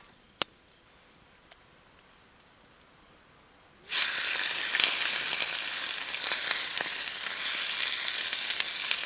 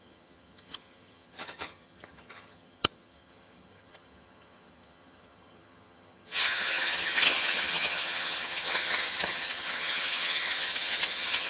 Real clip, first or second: first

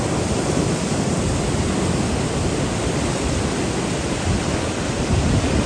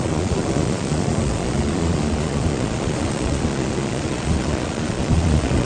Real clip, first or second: first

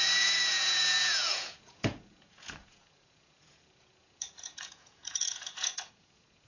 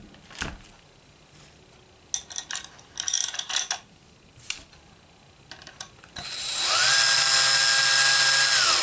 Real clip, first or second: second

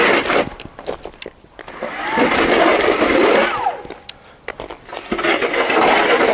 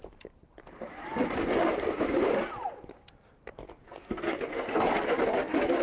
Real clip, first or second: first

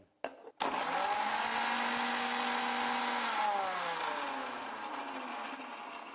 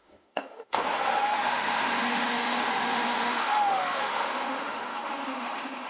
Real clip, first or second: first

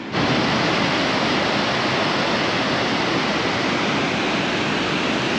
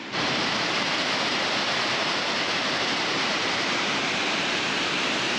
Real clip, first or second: first